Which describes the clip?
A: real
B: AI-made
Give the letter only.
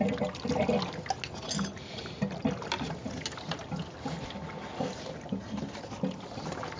A